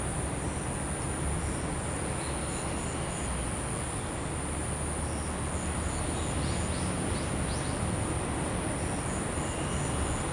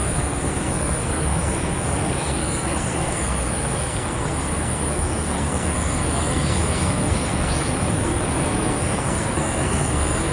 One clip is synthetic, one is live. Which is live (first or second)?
first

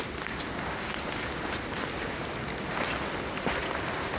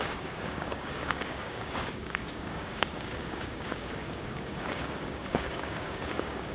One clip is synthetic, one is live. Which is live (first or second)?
first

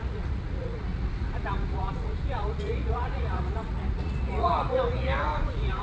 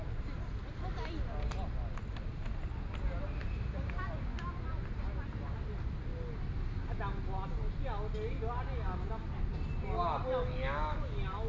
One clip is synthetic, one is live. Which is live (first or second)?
second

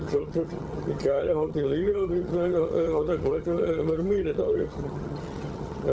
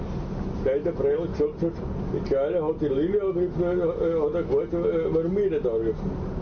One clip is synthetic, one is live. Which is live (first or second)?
second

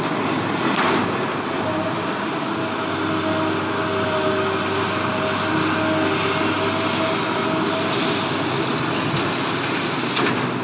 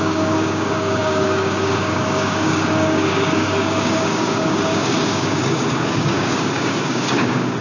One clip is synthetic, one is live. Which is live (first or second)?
first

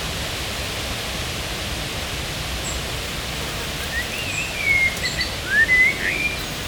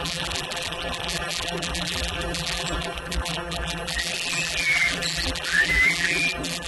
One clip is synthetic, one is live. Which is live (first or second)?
first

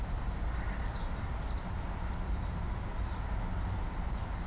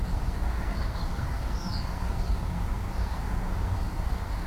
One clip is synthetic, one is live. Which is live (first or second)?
first